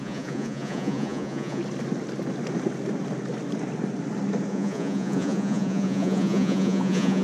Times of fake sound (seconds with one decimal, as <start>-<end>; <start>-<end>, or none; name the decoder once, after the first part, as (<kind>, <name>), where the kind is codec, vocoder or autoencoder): 0.0-1.6 (vocoder, Vocos); 4.5-7.2